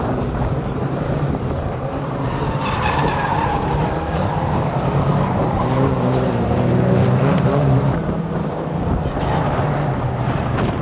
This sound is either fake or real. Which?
fake